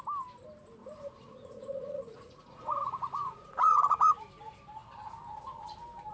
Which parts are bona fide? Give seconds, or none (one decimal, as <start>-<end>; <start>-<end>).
0.0-0.8; 4.2-6.1